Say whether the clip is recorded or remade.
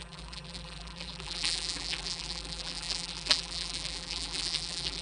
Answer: remade